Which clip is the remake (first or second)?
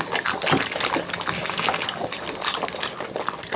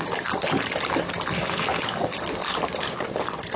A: second